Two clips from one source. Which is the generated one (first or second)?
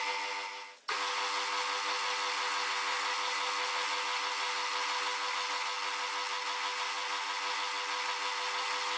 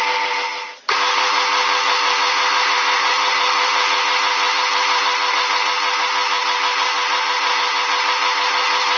second